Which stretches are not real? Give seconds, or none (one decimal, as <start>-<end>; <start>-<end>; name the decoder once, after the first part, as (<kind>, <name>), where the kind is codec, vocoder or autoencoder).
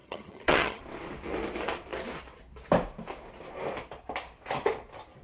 0.0-0.8 (vocoder, HiFi-GAN)